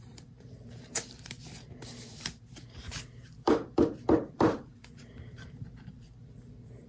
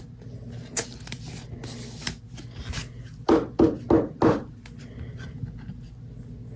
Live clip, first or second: second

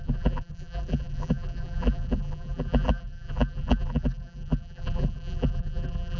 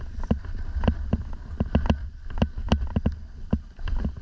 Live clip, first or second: second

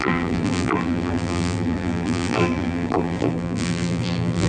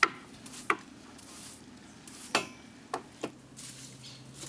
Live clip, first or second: second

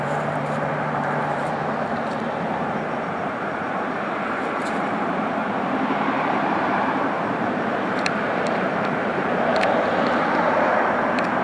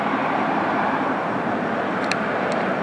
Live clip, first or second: second